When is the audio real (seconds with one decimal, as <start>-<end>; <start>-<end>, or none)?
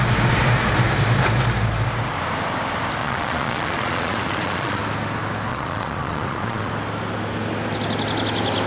0.0-3.0; 4.8-5.5; 6.7-8.7